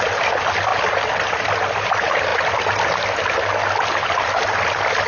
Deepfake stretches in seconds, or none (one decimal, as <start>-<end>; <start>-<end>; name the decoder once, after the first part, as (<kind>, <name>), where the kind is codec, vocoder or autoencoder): none